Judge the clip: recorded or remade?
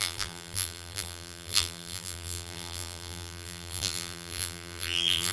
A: remade